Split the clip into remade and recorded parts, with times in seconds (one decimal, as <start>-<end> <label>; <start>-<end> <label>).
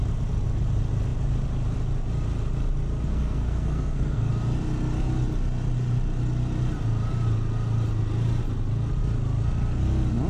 0.0-3.1 recorded; 3.1-4.3 remade; 4.3-10.3 recorded